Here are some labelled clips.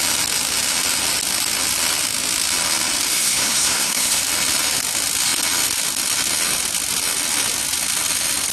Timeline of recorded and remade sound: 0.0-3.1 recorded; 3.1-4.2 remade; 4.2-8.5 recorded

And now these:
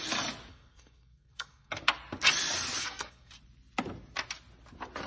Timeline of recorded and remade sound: 0.0-0.5 recorded; 0.5-1.7 remade; 1.7-2.8 recorded; 2.8-3.3 remade; 3.3-5.1 recorded